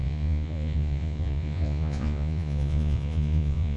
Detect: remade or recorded remade